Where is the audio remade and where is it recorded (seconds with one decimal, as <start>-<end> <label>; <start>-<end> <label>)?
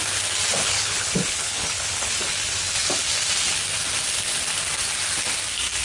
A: 0.0-0.6 recorded; 0.6-2.1 remade; 2.1-5.8 recorded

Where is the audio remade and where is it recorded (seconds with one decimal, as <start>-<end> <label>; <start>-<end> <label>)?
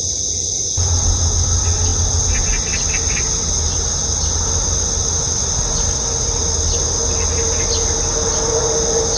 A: 0.0-9.2 recorded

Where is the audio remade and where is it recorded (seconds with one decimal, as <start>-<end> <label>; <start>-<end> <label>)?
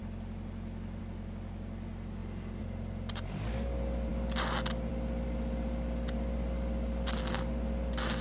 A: 0.0-8.2 recorded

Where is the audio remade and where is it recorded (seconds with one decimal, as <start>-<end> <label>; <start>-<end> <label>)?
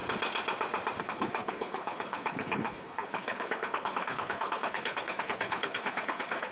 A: 0.0-1.0 recorded; 1.0-6.5 remade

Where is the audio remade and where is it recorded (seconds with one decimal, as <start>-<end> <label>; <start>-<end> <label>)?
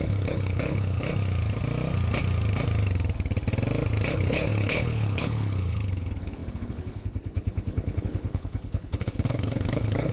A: 0.0-1.1 remade; 1.1-4.1 recorded; 4.1-10.1 remade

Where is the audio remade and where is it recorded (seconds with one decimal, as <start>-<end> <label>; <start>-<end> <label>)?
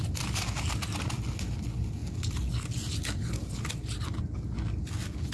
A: 0.0-5.3 recorded